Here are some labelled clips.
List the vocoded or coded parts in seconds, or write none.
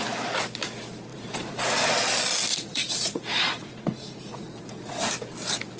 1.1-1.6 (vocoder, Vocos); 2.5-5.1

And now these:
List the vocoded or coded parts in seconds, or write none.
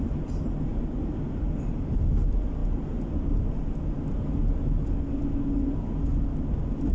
none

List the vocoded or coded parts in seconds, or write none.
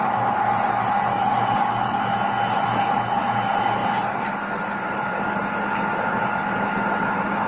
none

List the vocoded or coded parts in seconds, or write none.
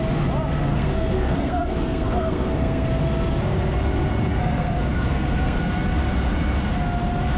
0.7-3.0 (codec, SNAC); 4.3-5.6